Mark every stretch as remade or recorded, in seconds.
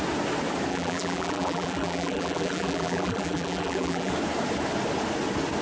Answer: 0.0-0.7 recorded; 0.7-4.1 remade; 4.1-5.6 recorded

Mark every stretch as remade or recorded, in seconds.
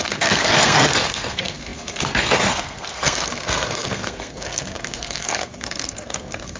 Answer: 0.0-6.6 remade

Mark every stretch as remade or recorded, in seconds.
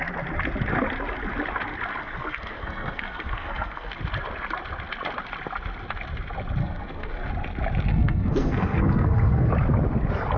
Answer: 0.0-2.0 recorded; 2.0-3.9 remade; 3.9-6.6 recorded; 6.6-7.3 remade; 7.3-7.9 recorded; 7.9-9.5 remade; 9.5-10.4 recorded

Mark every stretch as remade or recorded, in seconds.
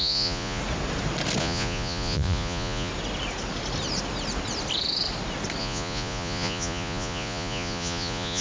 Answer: 0.0-0.6 remade; 0.6-1.4 recorded; 1.4-2.9 remade; 2.9-5.6 recorded; 5.6-8.4 remade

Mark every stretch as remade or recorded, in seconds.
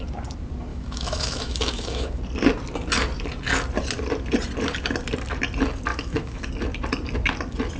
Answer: 0.0-0.7 recorded; 0.7-2.2 remade; 2.2-5.9 recorded; 5.9-6.5 remade; 6.5-7.8 recorded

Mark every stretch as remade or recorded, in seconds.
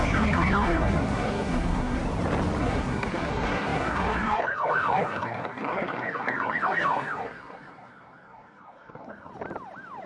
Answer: 0.0-2.0 remade; 2.0-2.6 recorded; 2.6-9.3 remade; 9.3-10.1 recorded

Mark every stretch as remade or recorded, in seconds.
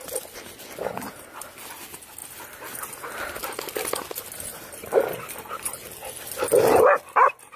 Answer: 0.0-7.6 recorded